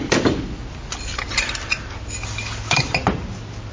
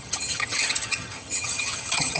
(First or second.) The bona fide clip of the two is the first